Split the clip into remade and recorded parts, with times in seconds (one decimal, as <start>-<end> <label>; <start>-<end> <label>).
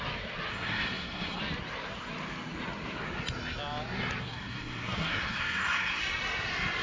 0.0-0.5 recorded; 0.5-1.4 remade; 1.4-4.2 recorded; 4.2-6.0 remade; 6.0-6.8 recorded